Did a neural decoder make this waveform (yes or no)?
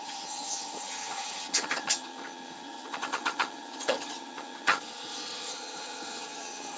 yes